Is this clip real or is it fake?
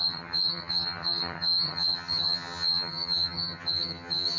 fake